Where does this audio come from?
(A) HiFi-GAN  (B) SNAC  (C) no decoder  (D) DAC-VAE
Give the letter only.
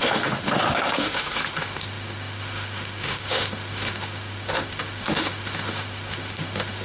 D